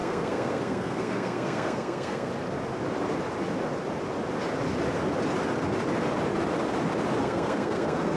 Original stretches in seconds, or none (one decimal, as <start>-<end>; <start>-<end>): 2.3-7.2